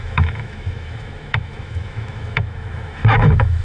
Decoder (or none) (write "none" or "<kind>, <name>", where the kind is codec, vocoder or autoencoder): autoencoder, DAC-VAE